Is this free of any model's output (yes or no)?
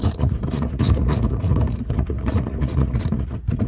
no